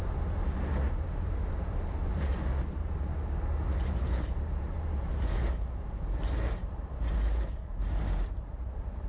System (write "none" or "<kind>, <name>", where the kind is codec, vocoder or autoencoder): vocoder, BigVGAN v2